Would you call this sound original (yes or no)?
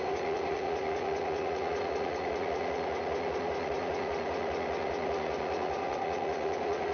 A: no